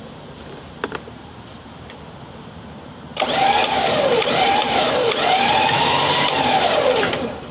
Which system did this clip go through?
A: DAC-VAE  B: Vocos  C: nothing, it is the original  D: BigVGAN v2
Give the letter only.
D